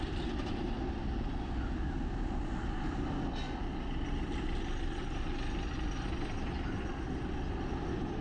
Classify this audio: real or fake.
real